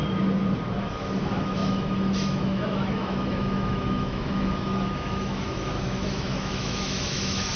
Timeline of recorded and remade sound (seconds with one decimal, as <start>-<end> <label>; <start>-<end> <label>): 0.0-0.8 recorded; 0.8-7.6 remade